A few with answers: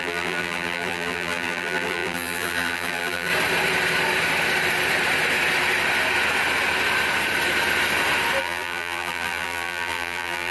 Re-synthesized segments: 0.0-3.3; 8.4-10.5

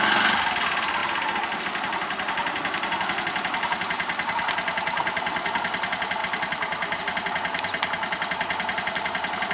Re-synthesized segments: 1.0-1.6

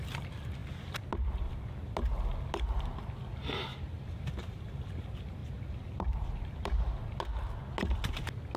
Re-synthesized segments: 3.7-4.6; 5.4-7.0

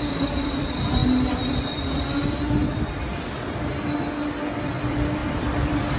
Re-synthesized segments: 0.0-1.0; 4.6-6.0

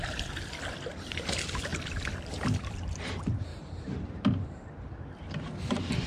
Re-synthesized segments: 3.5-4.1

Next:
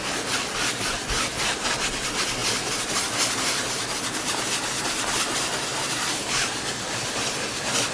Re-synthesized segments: 5.7-7.5

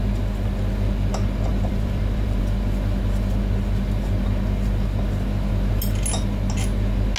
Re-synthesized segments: 1.5-2.4